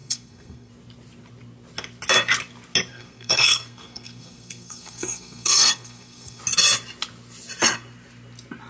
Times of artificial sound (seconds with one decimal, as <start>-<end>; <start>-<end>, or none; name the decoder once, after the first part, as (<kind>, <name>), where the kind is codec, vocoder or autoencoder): 0.0-0.7 (codec, SNAC); 2.9-6.4